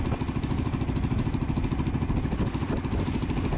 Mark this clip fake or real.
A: real